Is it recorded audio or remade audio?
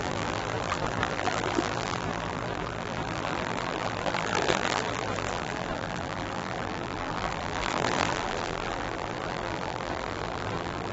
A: remade